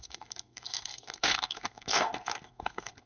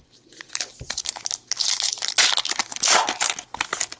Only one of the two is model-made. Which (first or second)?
first